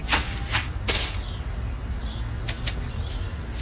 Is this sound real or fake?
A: real